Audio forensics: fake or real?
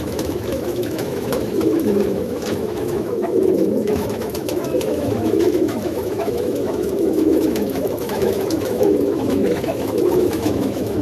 fake